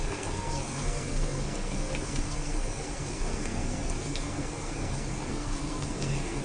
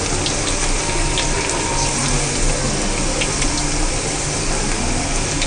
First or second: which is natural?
second